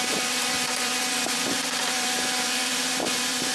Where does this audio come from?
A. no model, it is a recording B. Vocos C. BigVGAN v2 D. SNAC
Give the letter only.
C